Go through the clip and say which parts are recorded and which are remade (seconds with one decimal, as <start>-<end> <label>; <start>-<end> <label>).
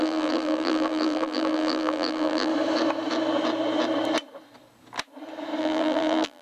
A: 0.0-2.5 remade; 2.5-5.6 recorded; 5.6-6.4 remade